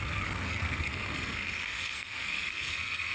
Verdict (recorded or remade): remade